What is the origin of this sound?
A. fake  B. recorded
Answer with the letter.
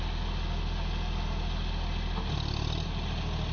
B